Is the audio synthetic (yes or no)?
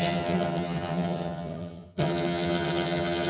yes